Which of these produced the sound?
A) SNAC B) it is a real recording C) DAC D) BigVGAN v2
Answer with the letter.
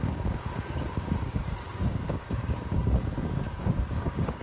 C